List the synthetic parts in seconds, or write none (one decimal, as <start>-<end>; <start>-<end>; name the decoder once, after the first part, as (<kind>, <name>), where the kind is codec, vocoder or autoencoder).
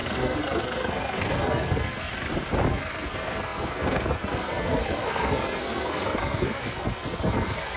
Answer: 0.0-2.1 (codec, SNAC); 2.7-7.8